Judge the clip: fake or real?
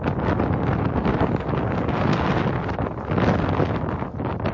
real